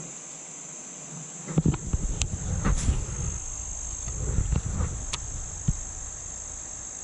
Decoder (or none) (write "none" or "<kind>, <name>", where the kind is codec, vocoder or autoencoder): none